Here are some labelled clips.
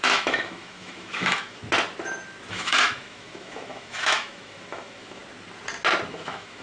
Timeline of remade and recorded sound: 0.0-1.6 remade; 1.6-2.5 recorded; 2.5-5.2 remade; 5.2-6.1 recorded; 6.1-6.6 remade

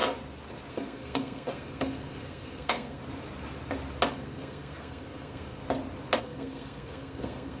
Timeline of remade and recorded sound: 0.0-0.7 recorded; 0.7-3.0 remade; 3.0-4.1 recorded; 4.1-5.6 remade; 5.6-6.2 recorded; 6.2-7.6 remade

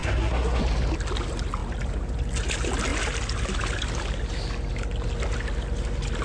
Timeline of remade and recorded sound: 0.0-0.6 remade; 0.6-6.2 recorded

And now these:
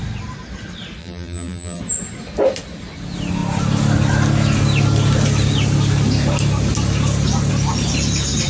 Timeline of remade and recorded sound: 0.0-1.0 recorded; 1.0-1.8 remade; 1.8-8.5 recorded

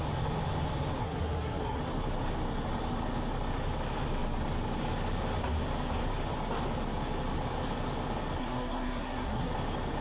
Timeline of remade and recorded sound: 0.0-1.0 recorded; 1.0-1.8 remade; 1.8-8.4 recorded; 8.4-9.5 remade; 9.5-10.0 recorded